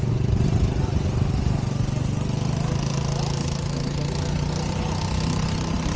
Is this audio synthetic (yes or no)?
no